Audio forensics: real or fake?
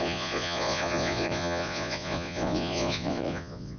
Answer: fake